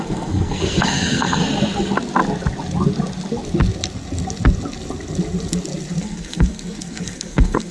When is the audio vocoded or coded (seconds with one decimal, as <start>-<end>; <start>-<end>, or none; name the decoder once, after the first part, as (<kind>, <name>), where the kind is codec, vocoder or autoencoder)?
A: 0.0-1.4 (codec, SNAC); 6.0-7.7